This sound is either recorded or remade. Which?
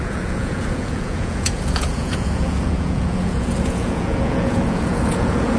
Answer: remade